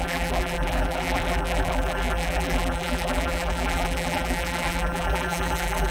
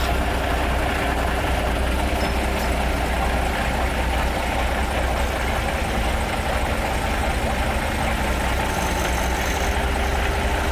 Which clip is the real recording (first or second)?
second